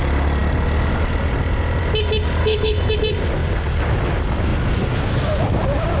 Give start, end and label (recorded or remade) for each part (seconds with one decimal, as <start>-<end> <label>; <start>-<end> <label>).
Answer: 0.0-2.4 recorded; 2.4-2.9 remade; 2.9-6.0 recorded

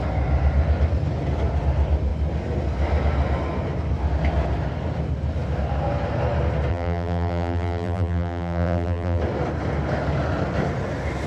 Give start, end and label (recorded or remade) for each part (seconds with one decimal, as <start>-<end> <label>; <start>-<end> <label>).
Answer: 0.0-6.7 recorded; 6.7-9.2 remade; 9.2-11.3 recorded

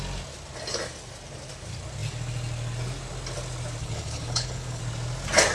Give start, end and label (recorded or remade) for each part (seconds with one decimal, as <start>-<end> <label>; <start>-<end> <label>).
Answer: 0.0-3.8 recorded; 3.8-4.8 remade; 4.8-5.5 recorded

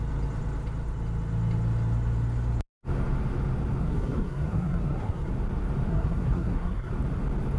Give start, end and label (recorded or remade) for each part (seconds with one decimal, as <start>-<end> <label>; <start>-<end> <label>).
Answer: 0.0-3.8 recorded; 3.8-5.3 remade; 5.3-5.9 recorded; 5.9-6.9 remade; 6.9-7.6 recorded

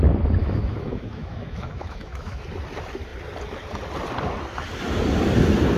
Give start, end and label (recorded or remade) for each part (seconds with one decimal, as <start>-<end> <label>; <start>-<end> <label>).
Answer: 0.0-0.4 recorded; 0.4-2.4 remade; 2.4-5.8 recorded

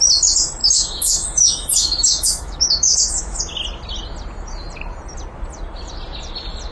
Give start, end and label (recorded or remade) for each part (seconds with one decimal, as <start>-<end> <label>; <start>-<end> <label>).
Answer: 0.0-0.6 recorded; 0.6-3.4 remade; 3.4-6.7 recorded

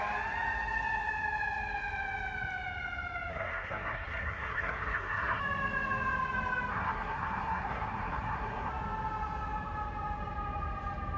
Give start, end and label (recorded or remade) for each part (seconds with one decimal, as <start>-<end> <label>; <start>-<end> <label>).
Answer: 0.0-3.3 recorded; 3.3-5.4 remade; 5.4-6.7 recorded; 6.7-8.7 remade; 8.7-11.2 recorded